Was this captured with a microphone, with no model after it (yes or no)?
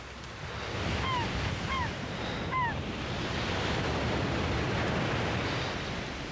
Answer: yes